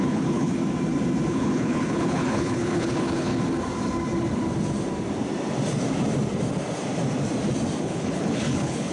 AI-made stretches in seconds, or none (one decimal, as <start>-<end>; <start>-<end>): 0.0-0.6; 1.3-3.3; 7.8-8.9